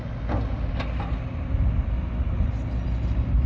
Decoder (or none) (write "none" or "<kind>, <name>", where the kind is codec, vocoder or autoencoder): none